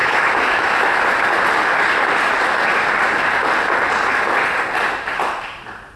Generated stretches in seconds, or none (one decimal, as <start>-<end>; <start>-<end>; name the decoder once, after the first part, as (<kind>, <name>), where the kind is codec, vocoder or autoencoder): 0.0-1.0 (autoencoder, DAC-VAE)